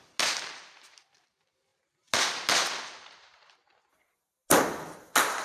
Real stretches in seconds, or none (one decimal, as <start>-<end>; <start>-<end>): 0.0-5.4